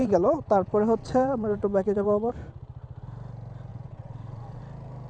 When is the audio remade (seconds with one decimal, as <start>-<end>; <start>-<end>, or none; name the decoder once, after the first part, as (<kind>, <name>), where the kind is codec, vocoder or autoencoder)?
0.0-2.3 (vocoder, WaveNeXt); 3.7-4.6